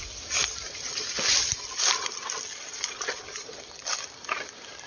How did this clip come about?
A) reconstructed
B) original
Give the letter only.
B